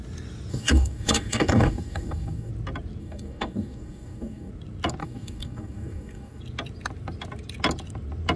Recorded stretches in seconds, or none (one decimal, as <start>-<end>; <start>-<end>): 0.0-0.5; 2.5-3.0; 4.5-5.0; 6.4-8.4